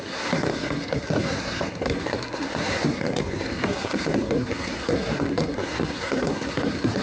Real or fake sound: fake